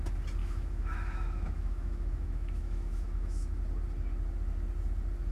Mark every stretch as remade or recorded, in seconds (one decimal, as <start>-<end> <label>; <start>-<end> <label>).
0.0-0.4 recorded; 0.4-3.6 remade; 3.6-5.3 recorded